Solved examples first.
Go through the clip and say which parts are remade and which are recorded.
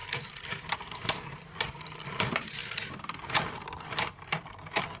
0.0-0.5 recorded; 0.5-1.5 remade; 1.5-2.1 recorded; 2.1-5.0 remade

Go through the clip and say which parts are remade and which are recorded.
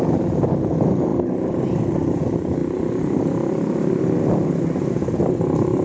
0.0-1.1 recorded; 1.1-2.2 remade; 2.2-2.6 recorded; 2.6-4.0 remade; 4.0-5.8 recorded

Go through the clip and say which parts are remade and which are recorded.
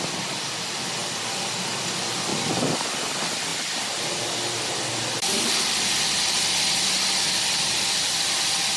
0.0-8.8 recorded